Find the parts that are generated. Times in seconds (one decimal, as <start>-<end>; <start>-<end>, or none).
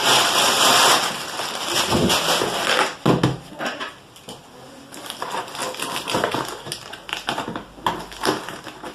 none